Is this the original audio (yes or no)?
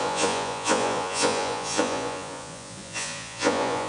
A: no